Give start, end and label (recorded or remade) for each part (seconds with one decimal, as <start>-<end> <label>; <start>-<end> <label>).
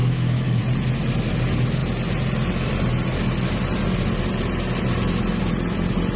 0.0-0.6 remade; 0.6-6.2 recorded